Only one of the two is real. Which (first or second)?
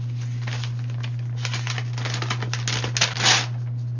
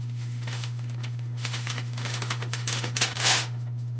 first